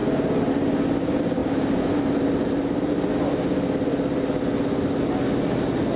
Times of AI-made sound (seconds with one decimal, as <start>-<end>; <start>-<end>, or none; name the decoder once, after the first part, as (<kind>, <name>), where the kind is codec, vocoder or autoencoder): 1.4-2.9 (vocoder, BigVGAN v2)